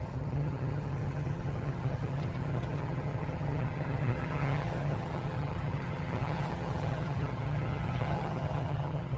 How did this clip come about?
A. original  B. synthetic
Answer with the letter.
B